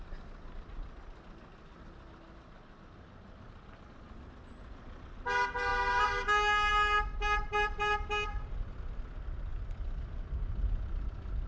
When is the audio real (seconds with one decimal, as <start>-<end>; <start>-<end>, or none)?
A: 0.0-11.5

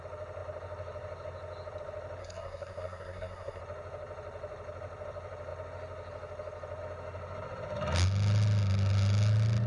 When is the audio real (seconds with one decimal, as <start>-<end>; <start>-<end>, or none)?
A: 0.0-2.2; 3.6-9.7

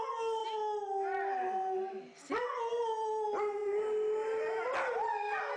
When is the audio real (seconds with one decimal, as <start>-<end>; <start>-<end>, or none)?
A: 0.0-5.6

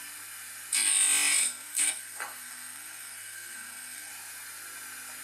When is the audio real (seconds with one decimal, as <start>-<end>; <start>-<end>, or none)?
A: 0.0-1.4; 4.1-5.2

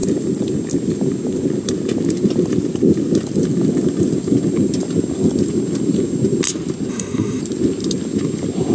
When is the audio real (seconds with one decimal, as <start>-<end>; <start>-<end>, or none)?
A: 0.0-6.9; 7.4-8.7

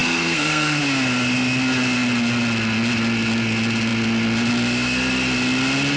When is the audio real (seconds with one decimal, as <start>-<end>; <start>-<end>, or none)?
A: 0.8-6.0

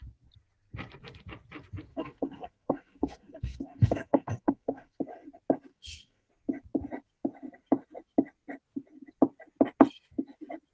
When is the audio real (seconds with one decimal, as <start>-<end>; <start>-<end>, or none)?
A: 0.0-1.9; 5.0-5.7; 6.3-10.7

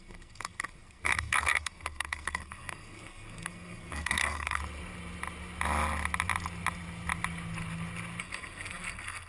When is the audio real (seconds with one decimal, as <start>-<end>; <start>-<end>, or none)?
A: 4.6-8.2